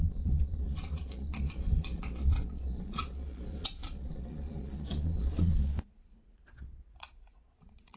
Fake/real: fake